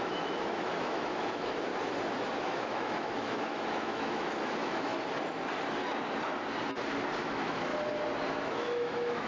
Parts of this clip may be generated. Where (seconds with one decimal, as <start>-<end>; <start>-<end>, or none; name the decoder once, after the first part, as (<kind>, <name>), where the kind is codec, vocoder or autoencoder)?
0.0-1.7 (autoencoder, DAC-VAE); 2.4-4.9; 7.2-7.7; 8.3-9.3